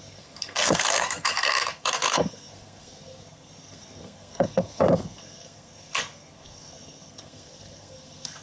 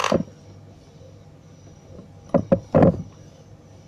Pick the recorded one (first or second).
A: second